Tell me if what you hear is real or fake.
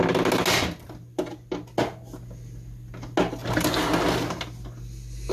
real